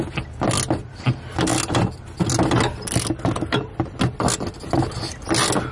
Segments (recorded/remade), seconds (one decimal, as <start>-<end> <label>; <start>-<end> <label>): 0.0-5.7 recorded